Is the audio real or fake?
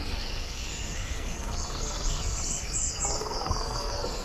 fake